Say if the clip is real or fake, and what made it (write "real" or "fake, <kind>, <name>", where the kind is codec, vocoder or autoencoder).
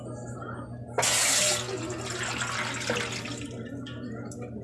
real